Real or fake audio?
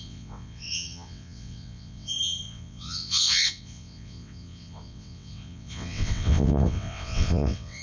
fake